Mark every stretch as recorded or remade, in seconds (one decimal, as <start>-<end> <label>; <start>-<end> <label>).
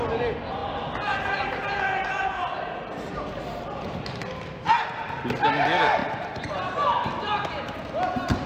0.0-6.0 recorded; 6.0-6.5 remade; 6.5-8.5 recorded